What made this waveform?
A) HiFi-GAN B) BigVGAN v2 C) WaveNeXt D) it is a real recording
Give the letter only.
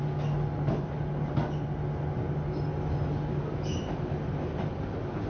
D